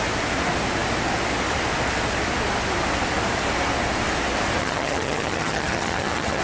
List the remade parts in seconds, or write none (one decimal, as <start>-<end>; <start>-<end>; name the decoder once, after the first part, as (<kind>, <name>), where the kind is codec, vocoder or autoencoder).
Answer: 4.6-6.4 (vocoder, HiFi-GAN)

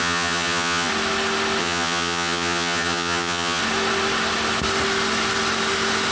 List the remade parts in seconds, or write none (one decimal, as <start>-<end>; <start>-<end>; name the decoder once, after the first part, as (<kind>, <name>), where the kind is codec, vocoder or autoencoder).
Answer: 0.0-0.9 (vocoder, HiFi-GAN); 1.6-3.6

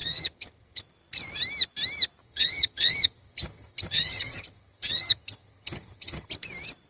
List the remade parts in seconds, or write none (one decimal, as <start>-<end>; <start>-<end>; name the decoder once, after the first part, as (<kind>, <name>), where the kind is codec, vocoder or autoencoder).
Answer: 0.0-0.8 (vocoder, HiFi-GAN); 2.2-6.3

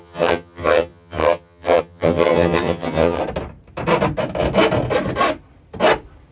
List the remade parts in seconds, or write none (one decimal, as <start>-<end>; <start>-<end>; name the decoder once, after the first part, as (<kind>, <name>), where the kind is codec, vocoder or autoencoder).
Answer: 0.0-3.2 (vocoder, HiFi-GAN)

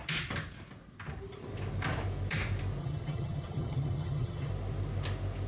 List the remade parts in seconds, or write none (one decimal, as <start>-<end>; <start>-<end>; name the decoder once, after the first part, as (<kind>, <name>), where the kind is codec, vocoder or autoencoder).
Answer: 2.8-4.5 (vocoder, HiFi-GAN)

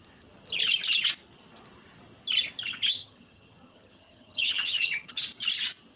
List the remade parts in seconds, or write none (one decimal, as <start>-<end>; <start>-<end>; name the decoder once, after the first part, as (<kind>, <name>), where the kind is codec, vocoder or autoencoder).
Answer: 3.0-5.2 (vocoder, HiFi-GAN)

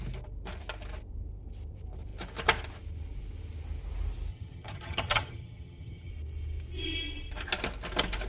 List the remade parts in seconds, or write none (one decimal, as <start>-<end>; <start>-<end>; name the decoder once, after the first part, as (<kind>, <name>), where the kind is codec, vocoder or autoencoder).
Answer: 4.3-6.1 (vocoder, HiFi-GAN)